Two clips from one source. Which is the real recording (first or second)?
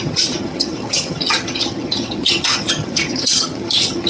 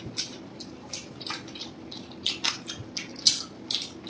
second